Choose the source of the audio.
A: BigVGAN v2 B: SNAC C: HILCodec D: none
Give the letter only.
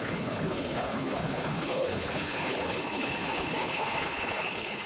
C